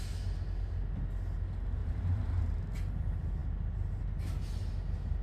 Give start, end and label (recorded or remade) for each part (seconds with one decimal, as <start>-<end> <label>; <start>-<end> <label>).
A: 0.0-1.8 recorded; 1.8-2.4 remade; 2.4-5.2 recorded